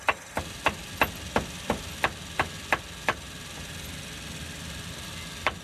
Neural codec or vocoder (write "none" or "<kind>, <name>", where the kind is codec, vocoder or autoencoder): none